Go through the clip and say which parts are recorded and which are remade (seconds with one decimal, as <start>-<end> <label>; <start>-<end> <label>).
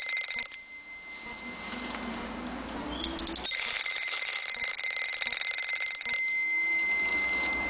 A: 0.0-7.7 recorded